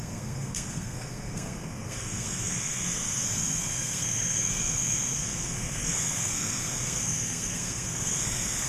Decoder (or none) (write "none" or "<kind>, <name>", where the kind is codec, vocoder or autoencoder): codec, SNAC